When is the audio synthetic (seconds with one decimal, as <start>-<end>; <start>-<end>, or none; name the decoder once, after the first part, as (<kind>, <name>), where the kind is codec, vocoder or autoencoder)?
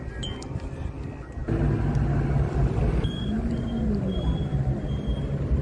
none